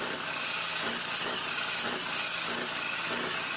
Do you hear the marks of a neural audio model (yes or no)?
no